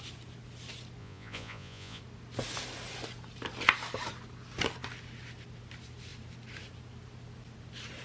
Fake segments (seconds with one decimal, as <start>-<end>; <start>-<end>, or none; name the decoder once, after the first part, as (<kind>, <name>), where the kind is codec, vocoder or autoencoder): 1.0-2.0 (vocoder, Vocos)